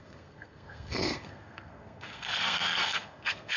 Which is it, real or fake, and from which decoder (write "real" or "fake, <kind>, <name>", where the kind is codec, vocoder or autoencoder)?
fake, codec, SNAC